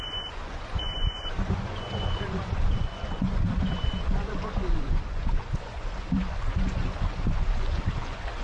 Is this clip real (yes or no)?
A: no